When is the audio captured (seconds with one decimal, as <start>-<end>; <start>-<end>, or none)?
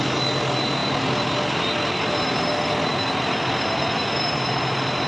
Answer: 0.0-5.1